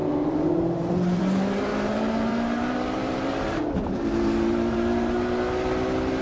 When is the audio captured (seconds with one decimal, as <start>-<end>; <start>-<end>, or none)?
1.2-1.7; 5.4-6.2